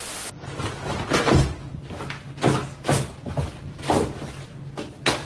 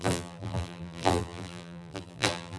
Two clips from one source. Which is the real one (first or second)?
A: first